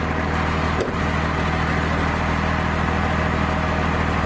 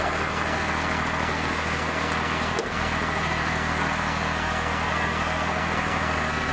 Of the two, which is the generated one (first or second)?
second